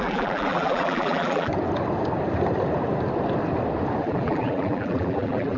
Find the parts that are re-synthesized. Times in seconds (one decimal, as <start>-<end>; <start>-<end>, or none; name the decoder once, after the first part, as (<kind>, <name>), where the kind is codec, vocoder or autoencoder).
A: 0.0-1.5 (vocoder, BigVGAN v2); 4.0-5.6